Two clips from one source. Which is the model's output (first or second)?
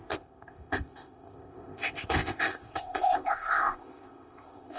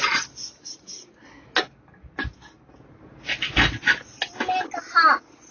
first